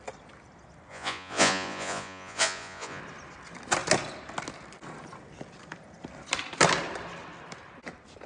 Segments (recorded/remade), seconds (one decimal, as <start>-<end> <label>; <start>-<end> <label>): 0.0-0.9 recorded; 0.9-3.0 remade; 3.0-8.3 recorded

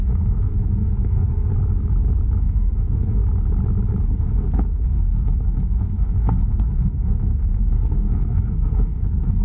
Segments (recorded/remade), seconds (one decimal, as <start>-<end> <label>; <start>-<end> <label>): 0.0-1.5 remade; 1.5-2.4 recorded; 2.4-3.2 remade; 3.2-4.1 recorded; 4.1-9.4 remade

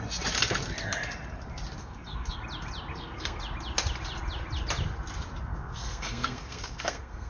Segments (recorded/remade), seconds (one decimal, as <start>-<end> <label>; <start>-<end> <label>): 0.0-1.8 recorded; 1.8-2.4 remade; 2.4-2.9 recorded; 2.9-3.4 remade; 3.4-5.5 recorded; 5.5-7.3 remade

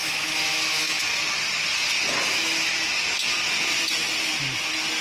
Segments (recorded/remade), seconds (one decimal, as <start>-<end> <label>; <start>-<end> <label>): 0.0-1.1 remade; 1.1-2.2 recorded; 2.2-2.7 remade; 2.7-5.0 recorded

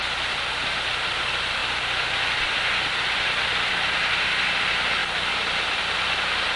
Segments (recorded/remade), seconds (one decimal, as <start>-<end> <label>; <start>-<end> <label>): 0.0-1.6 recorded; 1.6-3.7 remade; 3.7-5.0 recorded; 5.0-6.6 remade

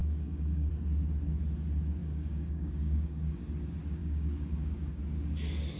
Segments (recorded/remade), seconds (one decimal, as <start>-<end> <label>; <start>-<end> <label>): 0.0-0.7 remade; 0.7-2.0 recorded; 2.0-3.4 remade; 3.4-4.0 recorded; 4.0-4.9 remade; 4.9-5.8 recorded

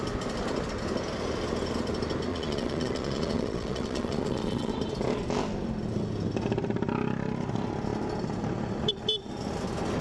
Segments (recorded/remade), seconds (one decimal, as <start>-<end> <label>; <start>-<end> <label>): 0.0-2.3 recorded; 2.3-4.7 remade; 4.7-10.0 recorded